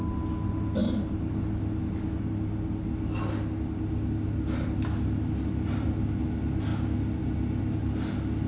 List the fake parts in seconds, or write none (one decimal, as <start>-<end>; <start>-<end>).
none